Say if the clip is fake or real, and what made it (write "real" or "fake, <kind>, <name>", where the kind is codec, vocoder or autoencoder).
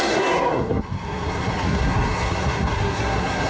fake, codec, SNAC